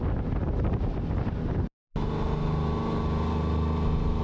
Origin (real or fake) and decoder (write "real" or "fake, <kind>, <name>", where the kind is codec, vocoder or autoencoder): real